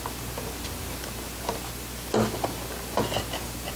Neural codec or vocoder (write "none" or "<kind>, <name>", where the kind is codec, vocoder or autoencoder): none